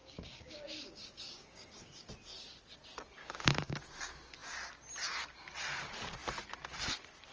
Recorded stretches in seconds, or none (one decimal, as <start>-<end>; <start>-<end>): 2.1-3.2; 3.8-7.3